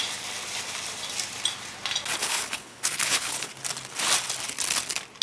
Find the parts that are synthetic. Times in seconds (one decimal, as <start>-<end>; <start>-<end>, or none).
2.2-3.5